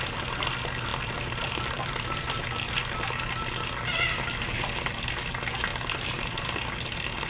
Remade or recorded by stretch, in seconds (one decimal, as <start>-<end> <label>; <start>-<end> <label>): 0.0-7.3 recorded